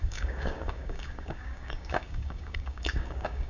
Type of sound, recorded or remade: remade